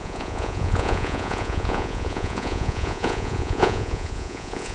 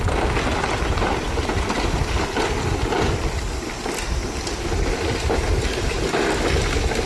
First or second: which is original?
second